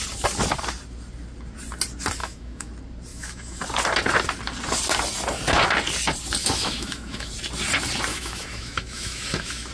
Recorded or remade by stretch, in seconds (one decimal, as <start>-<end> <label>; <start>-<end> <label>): 0.0-2.2 recorded; 2.2-2.7 remade; 2.7-3.1 recorded; 3.1-3.6 remade; 3.6-6.4 recorded; 6.4-7.3 remade; 7.3-8.1 recorded; 8.1-9.7 remade